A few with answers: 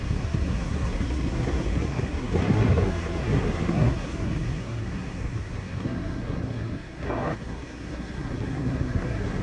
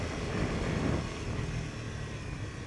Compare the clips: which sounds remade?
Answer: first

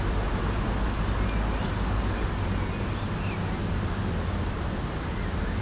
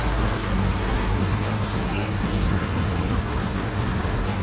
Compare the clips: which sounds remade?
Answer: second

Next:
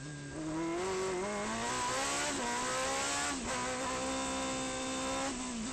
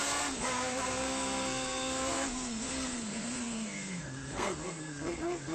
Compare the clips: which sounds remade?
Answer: second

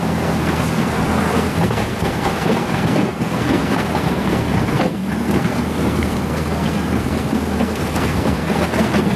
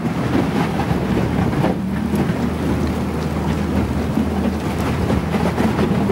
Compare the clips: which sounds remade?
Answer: first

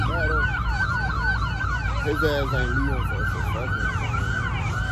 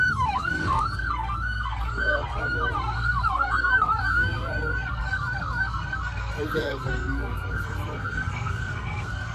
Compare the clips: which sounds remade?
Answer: second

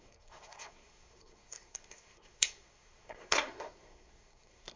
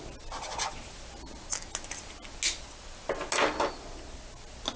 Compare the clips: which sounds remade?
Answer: first